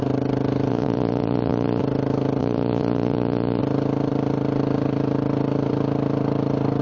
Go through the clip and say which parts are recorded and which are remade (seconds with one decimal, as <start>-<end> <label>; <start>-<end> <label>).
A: 0.0-0.7 recorded; 0.7-1.8 remade; 1.8-2.4 recorded; 2.4-3.6 remade; 3.6-6.8 recorded